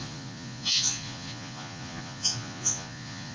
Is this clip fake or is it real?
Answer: fake